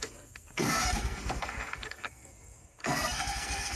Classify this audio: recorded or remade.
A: remade